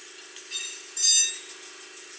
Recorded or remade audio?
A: recorded